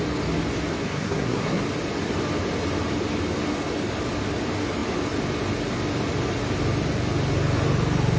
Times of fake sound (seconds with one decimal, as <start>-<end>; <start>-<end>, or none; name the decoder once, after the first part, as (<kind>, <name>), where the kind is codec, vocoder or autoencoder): 0.8-1.6 (codec, SNAC)